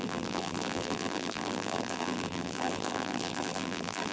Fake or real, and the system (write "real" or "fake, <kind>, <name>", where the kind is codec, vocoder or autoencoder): fake, vocoder, BigVGAN v2